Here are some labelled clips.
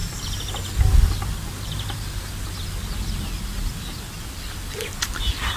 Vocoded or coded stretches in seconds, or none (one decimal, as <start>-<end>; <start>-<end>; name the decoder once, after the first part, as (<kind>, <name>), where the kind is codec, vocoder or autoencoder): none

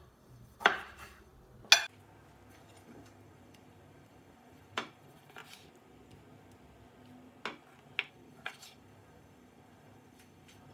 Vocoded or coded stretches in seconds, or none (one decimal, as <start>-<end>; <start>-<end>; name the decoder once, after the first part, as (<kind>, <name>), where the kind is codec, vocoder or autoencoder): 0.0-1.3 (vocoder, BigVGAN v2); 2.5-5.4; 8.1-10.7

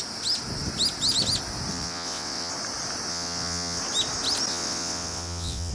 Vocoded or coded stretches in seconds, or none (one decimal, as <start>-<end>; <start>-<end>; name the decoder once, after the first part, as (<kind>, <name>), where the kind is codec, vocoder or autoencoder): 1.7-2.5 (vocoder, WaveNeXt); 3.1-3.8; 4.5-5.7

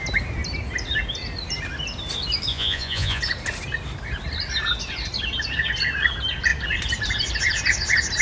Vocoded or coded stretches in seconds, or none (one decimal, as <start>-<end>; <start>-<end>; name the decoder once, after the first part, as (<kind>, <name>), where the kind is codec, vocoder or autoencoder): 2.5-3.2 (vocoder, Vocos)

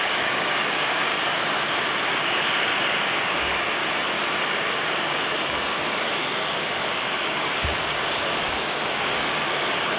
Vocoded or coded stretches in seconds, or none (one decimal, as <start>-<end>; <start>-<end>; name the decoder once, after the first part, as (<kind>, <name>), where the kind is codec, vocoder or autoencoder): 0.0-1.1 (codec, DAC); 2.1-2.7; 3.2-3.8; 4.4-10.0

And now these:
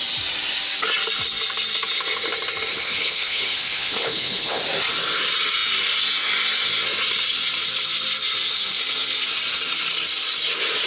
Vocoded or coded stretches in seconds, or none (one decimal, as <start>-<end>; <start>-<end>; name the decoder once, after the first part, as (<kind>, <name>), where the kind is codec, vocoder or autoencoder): 2.7-4.6 (codec, HILCodec)

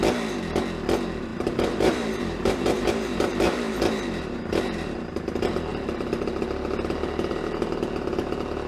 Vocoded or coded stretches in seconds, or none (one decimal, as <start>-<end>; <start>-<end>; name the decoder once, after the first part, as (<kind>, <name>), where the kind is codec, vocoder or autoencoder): 1.3-5.1 (vocoder, BigVGAN v2)